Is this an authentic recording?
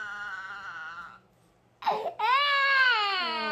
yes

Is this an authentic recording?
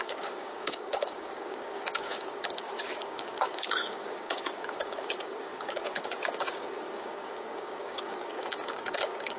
no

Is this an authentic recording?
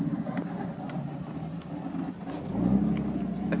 yes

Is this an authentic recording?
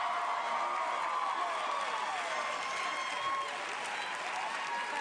yes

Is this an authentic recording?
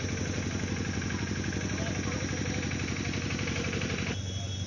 yes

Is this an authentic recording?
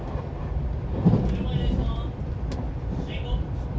yes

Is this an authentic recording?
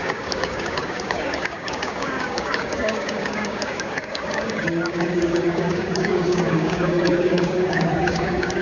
no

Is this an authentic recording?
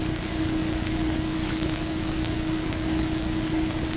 no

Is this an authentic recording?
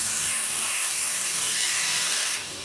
no